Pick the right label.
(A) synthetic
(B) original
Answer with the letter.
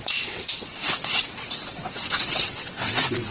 A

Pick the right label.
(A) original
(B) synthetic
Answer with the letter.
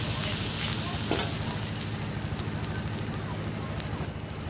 A